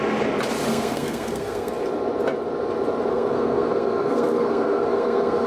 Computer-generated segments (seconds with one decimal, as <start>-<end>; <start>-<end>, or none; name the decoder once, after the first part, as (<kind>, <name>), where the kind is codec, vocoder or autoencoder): 0.7-1.7 (codec, SNAC); 3.1-5.5